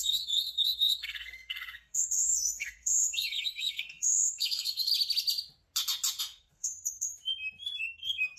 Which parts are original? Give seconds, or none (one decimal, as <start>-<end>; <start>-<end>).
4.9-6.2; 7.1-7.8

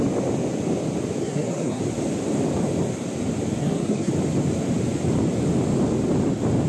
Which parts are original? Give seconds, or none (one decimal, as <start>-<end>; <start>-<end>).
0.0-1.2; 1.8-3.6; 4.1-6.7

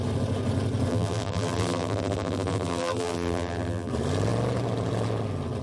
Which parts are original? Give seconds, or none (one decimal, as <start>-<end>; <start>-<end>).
0.0-0.9; 3.9-5.6

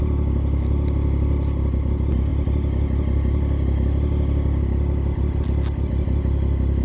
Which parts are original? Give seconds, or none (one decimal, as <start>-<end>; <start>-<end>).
0.0-6.8

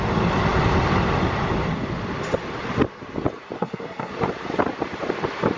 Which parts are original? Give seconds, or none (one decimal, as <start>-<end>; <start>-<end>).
0.0-3.6; 4.1-5.6

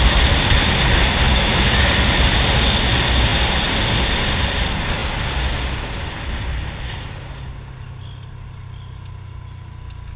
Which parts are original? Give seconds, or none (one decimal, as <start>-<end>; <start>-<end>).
0.0-1.3; 1.9-10.2

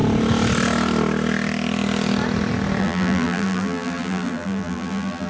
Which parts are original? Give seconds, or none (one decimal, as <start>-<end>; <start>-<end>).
0.0-2.8

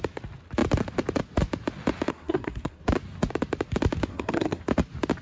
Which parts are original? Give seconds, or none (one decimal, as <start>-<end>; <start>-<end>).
0.0-2.1; 2.8-4.1; 4.6-5.2